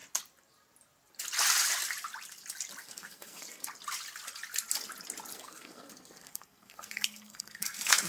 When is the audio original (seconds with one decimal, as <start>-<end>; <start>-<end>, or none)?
0.0-2.8; 3.7-5.3